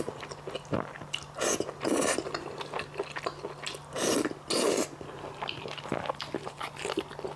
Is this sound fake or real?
real